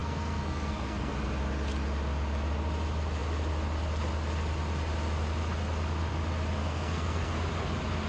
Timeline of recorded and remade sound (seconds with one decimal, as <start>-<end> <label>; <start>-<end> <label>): 0.0-1.1 remade; 1.1-6.6 recorded; 6.6-7.3 remade; 7.3-8.1 recorded